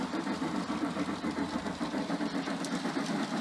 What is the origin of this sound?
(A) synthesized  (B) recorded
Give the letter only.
B